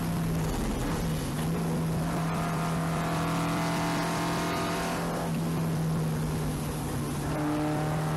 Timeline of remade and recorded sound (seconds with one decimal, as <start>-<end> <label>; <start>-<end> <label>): 0.0-8.2 recorded